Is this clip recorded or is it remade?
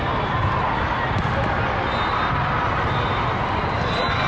recorded